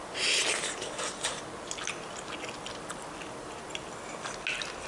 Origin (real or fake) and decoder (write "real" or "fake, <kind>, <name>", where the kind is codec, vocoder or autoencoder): real